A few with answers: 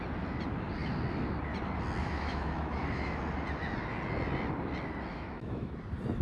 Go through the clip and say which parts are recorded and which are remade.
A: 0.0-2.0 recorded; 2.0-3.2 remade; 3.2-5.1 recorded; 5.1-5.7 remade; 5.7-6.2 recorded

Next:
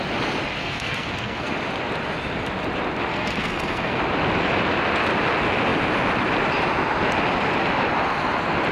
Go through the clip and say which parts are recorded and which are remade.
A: 0.0-0.6 recorded; 0.6-1.5 remade; 1.5-3.1 recorded; 3.1-4.0 remade; 4.0-8.7 recorded